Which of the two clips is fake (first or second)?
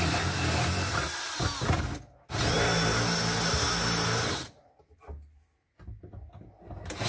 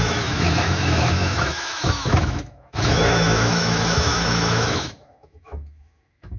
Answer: second